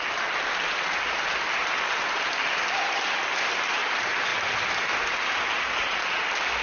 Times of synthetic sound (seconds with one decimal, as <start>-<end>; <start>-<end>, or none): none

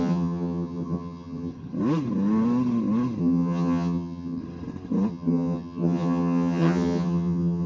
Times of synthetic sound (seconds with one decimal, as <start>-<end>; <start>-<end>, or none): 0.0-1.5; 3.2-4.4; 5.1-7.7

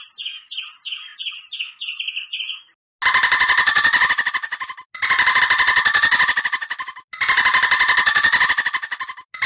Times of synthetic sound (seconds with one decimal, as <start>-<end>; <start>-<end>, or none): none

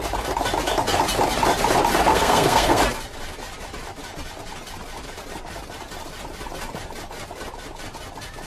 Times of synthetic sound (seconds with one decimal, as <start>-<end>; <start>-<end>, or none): 2.1-2.8

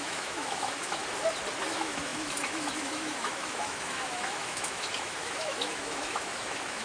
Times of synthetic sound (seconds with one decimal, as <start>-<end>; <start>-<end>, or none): 0.0-1.0; 1.6-6.8

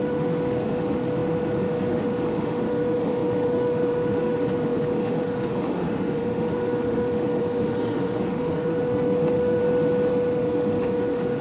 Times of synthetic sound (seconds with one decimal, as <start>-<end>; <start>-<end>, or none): 0.0-9.6; 10.1-11.4